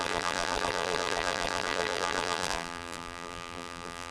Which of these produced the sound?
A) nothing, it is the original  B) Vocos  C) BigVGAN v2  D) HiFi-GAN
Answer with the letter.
C